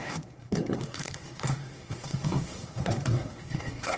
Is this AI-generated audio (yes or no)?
yes